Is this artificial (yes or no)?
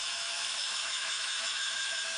yes